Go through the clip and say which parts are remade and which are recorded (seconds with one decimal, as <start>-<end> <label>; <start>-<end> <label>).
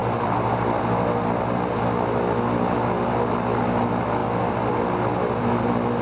0.0-6.0 recorded